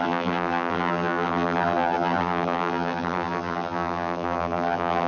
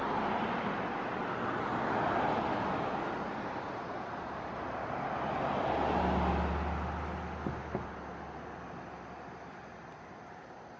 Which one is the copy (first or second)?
first